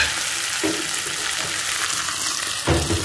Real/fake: real